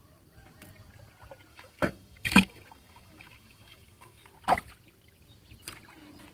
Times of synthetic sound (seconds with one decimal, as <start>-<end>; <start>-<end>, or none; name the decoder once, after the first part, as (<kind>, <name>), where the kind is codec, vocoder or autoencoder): 1.5-4.3 (autoencoder, DAC-VAE)